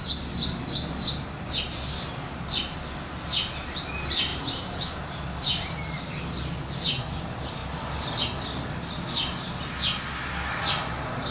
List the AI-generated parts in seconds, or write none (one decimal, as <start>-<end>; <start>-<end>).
4.3-4.9